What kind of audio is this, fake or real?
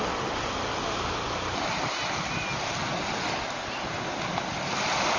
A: real